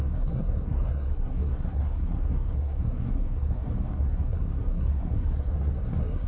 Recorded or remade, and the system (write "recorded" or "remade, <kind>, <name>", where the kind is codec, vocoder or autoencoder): remade, codec, SNAC